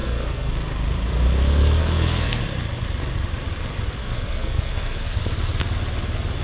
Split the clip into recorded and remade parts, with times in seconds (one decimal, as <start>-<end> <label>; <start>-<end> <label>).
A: 0.0-0.5 remade; 0.5-1.8 recorded; 1.8-2.4 remade; 2.4-4.0 recorded; 4.0-5.2 remade; 5.2-6.4 recorded